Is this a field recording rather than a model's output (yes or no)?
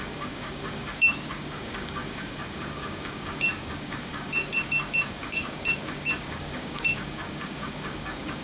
no